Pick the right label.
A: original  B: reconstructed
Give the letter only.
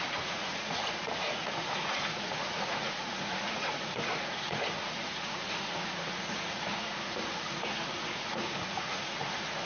B